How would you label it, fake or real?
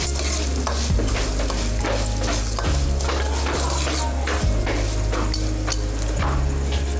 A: real